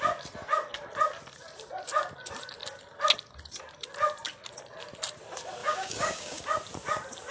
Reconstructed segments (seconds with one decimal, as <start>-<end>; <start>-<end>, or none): 5.6-6.4

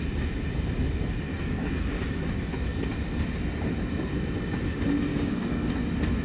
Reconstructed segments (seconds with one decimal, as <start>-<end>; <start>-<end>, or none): 1.3-1.8; 5.1-5.7